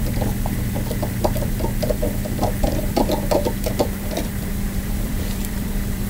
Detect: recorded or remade remade